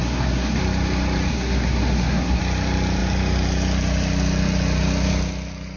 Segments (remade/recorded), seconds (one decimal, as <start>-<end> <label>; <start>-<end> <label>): 0.0-0.6 remade; 0.6-1.3 recorded; 1.3-2.4 remade; 2.4-5.8 recorded